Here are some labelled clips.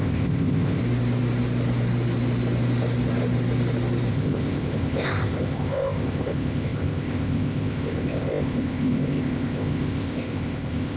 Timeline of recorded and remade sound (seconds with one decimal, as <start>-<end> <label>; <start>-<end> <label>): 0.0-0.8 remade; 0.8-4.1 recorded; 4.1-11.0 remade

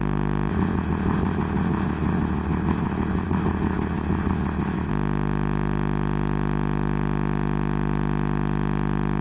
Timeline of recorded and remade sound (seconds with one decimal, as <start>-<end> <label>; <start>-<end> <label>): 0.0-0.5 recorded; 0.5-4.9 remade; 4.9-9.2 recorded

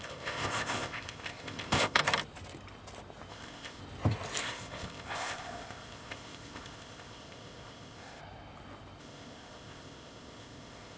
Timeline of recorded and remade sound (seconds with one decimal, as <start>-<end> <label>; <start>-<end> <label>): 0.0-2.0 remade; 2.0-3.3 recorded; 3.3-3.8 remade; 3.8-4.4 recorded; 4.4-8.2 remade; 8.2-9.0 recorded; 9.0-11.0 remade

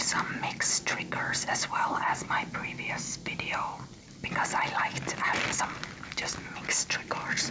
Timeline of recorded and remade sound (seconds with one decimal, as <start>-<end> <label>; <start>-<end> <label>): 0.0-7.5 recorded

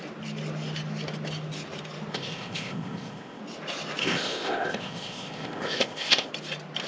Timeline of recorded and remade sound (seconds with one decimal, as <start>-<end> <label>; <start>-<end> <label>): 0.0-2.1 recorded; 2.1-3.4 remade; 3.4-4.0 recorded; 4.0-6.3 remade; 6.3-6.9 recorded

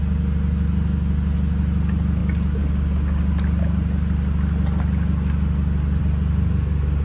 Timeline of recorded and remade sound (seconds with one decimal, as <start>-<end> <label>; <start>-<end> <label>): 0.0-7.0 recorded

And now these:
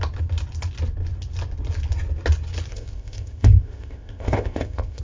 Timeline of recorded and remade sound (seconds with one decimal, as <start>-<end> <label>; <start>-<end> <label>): 0.0-2.7 recorded; 2.7-5.0 remade

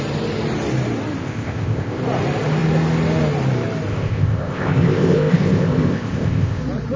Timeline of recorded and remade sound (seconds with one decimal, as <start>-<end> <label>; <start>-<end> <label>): 0.0-1.2 recorded; 1.2-2.0 remade; 2.0-3.9 recorded; 3.9-6.6 remade; 6.6-7.0 recorded